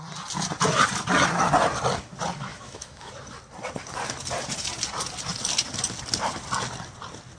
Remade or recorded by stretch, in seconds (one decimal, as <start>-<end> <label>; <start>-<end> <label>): 0.0-2.5 recorded; 2.5-3.1 remade; 3.1-7.4 recorded

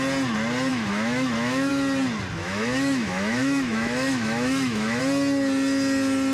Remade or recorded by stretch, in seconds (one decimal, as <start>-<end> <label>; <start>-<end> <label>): 0.0-0.7 recorded; 0.7-1.7 remade; 1.7-2.4 recorded; 2.4-5.0 remade; 5.0-6.3 recorded

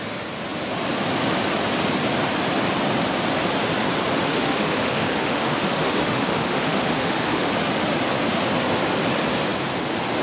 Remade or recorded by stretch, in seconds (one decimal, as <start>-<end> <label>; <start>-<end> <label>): 0.0-4.3 recorded; 4.3-7.5 remade; 7.5-10.2 recorded

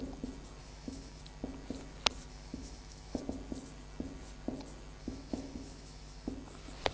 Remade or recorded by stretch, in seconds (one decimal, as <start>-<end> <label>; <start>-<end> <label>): 0.0-0.6 recorded; 0.6-1.2 remade; 1.2-2.3 recorded; 2.3-3.2 remade; 3.2-5.0 recorded; 5.0-6.3 remade; 6.3-6.9 recorded

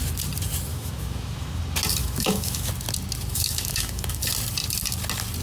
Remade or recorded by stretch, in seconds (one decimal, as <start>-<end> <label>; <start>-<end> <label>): 0.0-0.7 recorded; 0.7-1.6 remade; 1.6-2.0 recorded; 2.0-2.7 remade; 2.7-3.3 recorded; 3.3-4.2 remade; 4.2-5.4 recorded

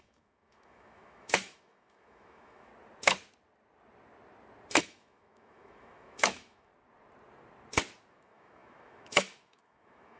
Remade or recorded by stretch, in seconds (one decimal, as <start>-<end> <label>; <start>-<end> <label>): 0.0-2.7 remade; 2.7-4.8 recorded; 4.8-6.7 remade; 6.7-8.1 recorded; 8.1-10.2 remade

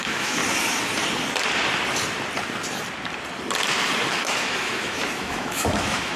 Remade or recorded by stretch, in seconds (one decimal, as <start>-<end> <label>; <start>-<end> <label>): 0.0-0.4 remade; 0.4-4.1 recorded; 4.1-6.2 remade